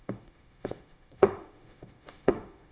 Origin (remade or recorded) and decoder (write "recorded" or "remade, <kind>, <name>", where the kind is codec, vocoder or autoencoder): remade, autoencoder, DAC-VAE